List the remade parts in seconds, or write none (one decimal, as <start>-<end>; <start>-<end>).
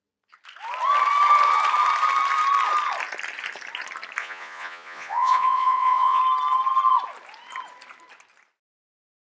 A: 4.2-6.2